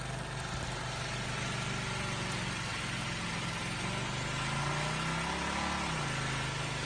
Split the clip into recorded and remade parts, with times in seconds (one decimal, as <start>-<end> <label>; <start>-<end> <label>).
0.0-6.9 recorded